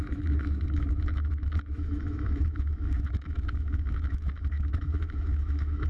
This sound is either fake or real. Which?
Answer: fake